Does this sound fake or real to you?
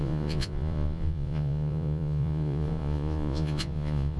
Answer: fake